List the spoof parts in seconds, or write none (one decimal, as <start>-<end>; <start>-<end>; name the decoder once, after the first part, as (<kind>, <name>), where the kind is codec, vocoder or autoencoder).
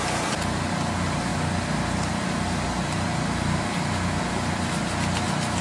1.3-4.7 (vocoder, BigVGAN v2)